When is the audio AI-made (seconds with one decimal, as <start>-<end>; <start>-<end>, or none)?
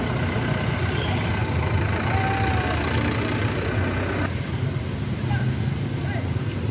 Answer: none